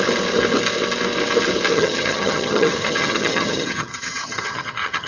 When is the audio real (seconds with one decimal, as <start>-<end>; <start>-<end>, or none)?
0.0-1.7